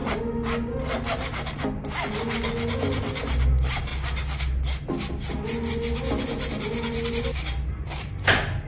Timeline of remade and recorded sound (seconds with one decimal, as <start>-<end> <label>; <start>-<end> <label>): 0.0-8.7 recorded